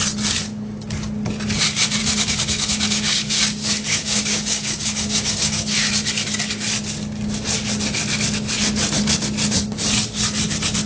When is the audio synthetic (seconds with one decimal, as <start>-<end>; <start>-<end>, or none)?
2.0-5.9